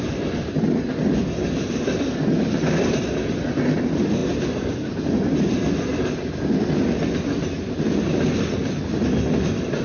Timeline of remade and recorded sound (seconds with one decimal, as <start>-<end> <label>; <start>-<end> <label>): 0.0-9.8 recorded